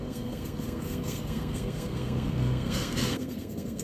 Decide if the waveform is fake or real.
fake